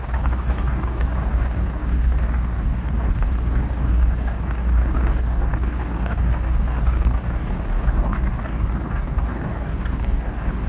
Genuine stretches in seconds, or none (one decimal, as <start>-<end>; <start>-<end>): none